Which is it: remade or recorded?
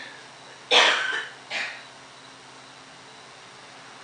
recorded